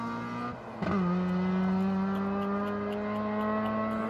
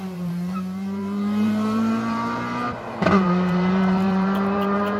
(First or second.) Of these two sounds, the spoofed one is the second